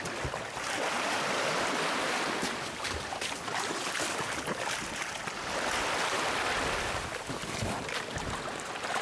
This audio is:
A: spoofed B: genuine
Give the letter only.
B